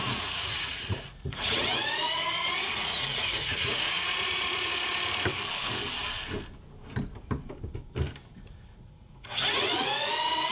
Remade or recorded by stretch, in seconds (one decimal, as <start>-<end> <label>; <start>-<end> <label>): 0.0-4.7 remade; 4.7-8.2 recorded; 8.2-10.1 remade; 10.1-10.5 recorded